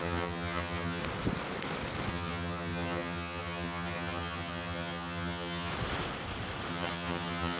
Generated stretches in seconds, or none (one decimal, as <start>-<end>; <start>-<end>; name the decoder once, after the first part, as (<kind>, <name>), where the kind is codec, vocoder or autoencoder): 0.0-1.0 (vocoder, HiFi-GAN); 2.1-5.7; 6.7-7.6